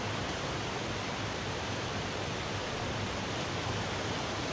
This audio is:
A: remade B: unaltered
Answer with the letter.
B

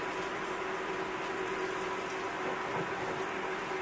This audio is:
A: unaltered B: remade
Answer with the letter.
A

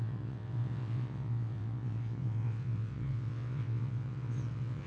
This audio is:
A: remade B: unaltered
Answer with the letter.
A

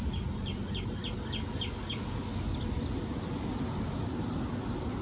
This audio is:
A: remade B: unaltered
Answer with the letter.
B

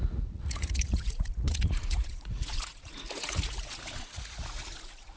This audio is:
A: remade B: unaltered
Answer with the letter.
A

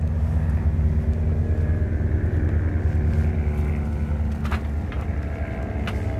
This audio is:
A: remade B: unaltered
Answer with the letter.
B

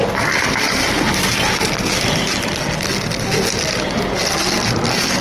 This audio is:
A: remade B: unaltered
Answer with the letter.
B